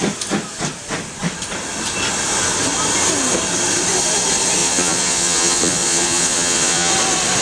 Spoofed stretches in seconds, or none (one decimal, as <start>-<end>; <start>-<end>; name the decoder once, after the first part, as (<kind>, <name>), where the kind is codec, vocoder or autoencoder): 4.6-6.9 (vocoder, Vocos)